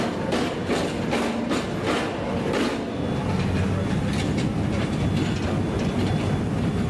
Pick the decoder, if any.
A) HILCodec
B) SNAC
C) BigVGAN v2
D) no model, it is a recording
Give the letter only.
D